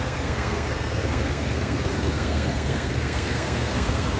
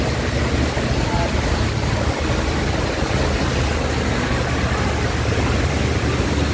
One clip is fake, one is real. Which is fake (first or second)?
first